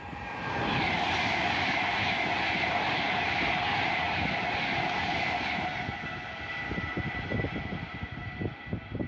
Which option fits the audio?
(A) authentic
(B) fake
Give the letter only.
A